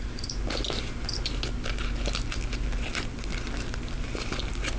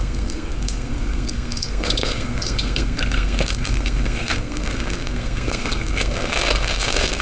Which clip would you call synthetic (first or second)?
second